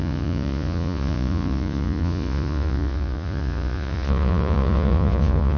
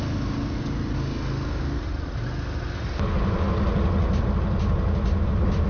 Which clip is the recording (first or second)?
second